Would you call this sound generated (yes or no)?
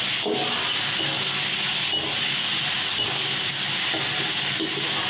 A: no